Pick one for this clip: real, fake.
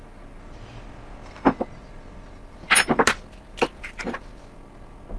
real